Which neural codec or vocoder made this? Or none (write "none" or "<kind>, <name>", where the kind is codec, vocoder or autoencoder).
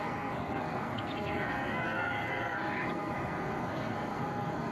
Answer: codec, SNAC